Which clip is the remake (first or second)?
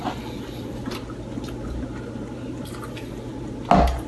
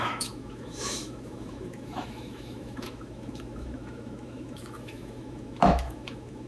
second